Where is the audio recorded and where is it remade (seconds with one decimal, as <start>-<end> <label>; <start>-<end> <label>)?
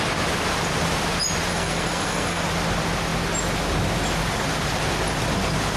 0.0-1.5 recorded; 1.5-2.4 remade; 2.4-5.8 recorded